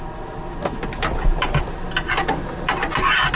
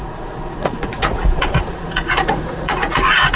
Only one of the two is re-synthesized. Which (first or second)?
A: second